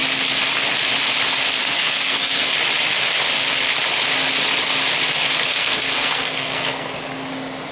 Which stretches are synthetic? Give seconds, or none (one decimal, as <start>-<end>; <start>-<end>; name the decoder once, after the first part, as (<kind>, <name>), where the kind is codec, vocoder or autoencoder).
1.6-2.5 (codec, SNAC); 5.5-6.9